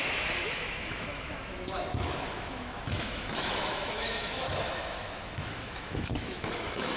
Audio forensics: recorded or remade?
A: remade